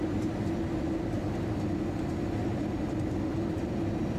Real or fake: real